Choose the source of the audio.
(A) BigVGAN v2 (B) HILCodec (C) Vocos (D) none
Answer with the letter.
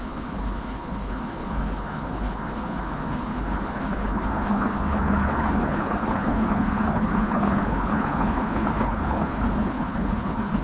B